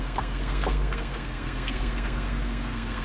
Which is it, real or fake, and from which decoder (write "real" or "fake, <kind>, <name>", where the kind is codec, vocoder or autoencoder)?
fake, codec, SNAC